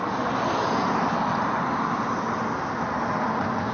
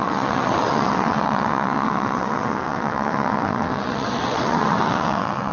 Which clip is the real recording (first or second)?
first